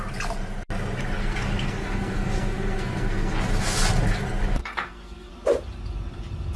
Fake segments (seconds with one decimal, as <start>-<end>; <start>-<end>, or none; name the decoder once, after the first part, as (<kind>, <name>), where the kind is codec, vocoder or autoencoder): 1.2-3.4 (codec, SNAC); 4.6-5.3